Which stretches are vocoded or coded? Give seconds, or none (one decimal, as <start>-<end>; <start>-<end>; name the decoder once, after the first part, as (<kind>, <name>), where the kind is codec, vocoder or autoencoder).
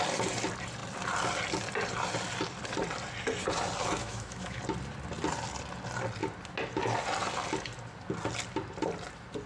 4.0-4.6 (autoencoder, DAC-VAE)